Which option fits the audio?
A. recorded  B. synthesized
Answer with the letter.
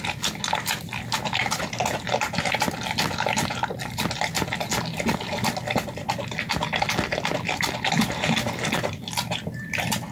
A